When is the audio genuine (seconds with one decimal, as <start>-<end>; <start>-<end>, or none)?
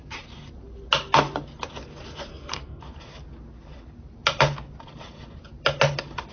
0.0-2.3; 2.8-6.3